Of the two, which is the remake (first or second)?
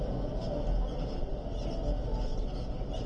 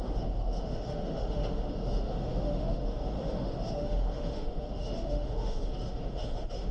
second